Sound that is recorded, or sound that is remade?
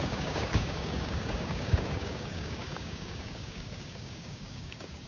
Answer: remade